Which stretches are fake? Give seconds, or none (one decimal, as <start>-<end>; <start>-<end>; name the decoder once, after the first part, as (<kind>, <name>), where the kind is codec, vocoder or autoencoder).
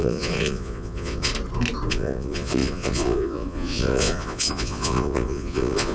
0.0-1.3 (vocoder, Vocos); 1.9-5.9